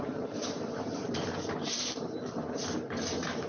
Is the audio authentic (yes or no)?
no